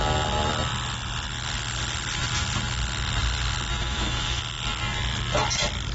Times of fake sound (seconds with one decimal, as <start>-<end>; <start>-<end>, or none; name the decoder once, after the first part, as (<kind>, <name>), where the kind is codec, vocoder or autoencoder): 3.7-4.4 (autoencoder, DAC-VAE)